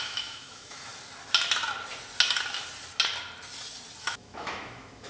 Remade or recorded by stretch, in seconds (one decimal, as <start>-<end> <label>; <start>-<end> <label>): 0.0-0.9 remade; 0.9-4.0 recorded; 4.0-5.1 remade